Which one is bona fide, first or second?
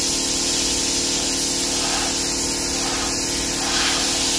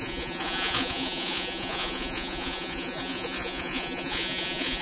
first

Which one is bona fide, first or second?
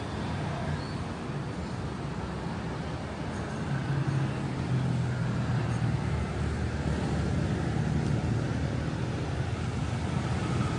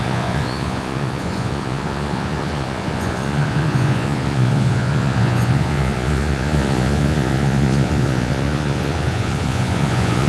first